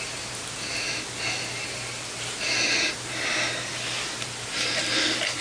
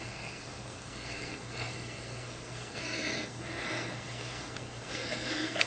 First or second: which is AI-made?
second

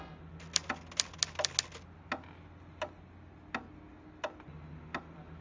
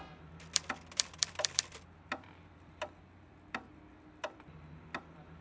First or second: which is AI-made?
second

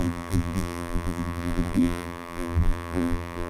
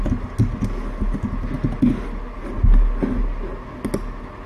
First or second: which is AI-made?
first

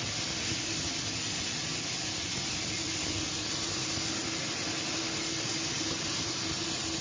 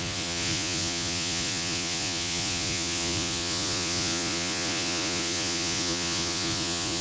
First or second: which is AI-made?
second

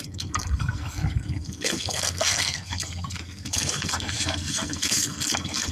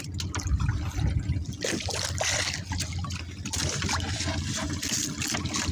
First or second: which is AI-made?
first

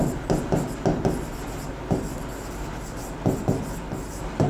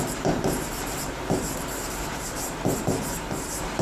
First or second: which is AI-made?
second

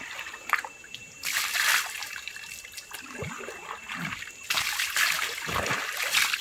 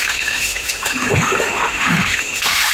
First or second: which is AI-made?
second